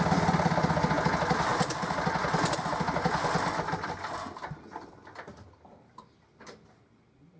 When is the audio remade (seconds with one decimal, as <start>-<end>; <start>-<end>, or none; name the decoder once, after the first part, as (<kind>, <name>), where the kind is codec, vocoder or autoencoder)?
none